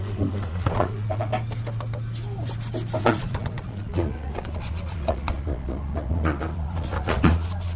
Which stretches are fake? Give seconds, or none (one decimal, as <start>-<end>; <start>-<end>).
0.0-1.3; 3.0-7.8